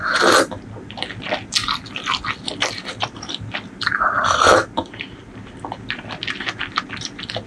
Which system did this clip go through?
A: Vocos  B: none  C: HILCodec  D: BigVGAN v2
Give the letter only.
B